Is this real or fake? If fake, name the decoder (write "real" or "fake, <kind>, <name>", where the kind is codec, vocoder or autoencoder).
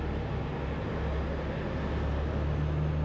real